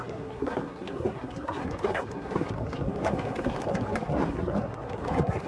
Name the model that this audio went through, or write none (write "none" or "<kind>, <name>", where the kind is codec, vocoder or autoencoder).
codec, SNAC